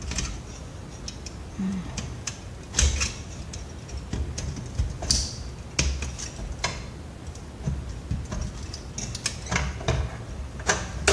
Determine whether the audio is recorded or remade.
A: recorded